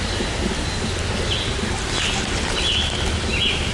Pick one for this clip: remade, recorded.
recorded